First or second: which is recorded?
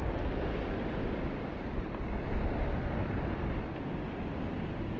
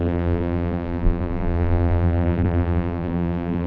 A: first